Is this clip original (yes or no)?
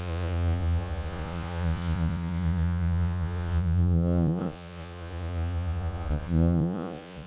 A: no